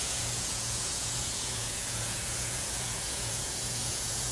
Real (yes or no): no